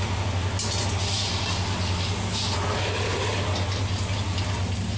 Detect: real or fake real